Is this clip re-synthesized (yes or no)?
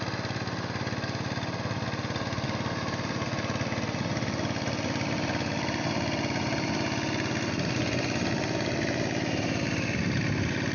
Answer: no